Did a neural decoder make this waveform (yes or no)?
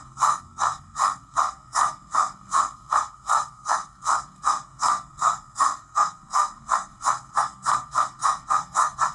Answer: yes